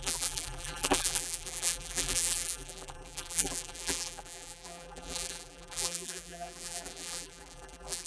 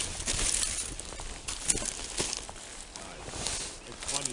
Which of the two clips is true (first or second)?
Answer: second